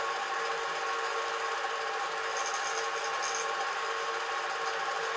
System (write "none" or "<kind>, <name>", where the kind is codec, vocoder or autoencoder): none